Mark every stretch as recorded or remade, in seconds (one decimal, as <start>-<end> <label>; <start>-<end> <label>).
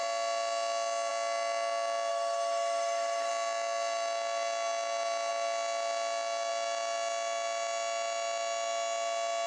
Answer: 0.0-2.1 recorded; 2.1-3.3 remade; 3.3-9.5 recorded